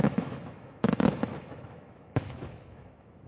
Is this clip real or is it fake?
fake